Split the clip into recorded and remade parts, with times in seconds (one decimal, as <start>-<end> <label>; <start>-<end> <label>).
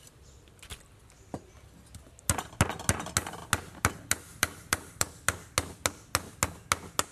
0.0-4.3 recorded; 4.3-5.1 remade; 5.1-7.1 recorded